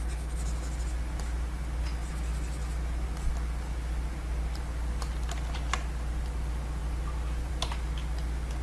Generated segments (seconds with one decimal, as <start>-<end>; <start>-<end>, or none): none